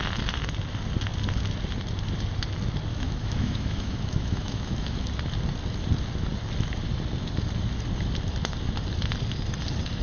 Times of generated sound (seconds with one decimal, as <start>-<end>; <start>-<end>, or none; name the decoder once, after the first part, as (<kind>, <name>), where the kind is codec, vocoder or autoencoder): 2.9-5.1 (autoencoder, DAC-VAE)

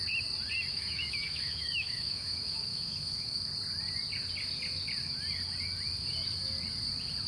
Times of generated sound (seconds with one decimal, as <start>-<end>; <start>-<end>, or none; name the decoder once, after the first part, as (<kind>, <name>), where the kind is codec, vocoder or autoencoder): 0.7-3.5 (autoencoder, DAC-VAE)

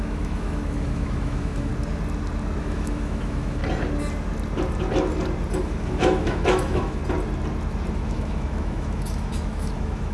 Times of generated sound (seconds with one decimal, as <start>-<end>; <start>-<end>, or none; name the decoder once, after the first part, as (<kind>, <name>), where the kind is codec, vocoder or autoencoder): 0.0-1.7 (autoencoder, DAC-VAE); 2.6-3.6; 5.6-7.0; 7.9-10.1